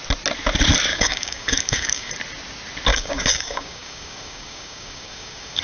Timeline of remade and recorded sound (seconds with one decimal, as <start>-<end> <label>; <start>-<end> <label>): 0.0-0.9 recorded; 0.9-2.1 remade; 2.1-2.9 recorded; 2.9-5.6 remade